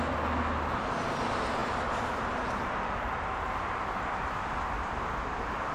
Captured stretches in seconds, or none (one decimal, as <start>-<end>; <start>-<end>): 0.0-5.7